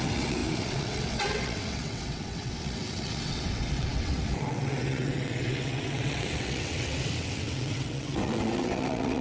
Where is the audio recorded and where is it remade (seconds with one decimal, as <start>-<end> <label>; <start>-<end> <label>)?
0.0-9.2 remade